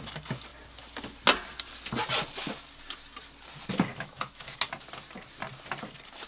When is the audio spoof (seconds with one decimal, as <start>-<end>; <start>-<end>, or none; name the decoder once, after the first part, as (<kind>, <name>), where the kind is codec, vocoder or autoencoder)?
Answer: 3.9-4.6 (autoencoder, DAC-VAE)

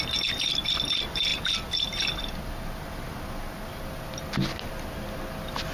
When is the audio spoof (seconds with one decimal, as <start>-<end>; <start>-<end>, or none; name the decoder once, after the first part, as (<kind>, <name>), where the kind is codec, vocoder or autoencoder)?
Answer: none

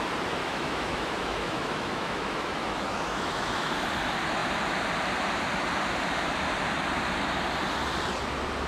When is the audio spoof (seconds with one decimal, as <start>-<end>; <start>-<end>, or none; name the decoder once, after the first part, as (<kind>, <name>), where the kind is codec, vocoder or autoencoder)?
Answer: 0.4-3.7 (autoencoder, DAC-VAE)

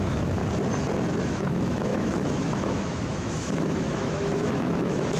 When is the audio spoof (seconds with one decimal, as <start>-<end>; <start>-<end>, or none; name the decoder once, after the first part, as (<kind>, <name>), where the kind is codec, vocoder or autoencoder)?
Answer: 0.0-0.4 (autoencoder, DAC-VAE); 1.3-5.2

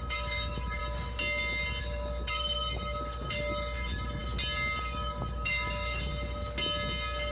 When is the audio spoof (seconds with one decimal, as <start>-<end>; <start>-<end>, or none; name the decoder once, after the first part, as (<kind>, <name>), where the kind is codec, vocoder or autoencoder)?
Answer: 0.0-0.8 (autoencoder, DAC-VAE); 1.8-4.2; 4.8-6.1

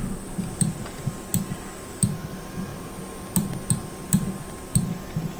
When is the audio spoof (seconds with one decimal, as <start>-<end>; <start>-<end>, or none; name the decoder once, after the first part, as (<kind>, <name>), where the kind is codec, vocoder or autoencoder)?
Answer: none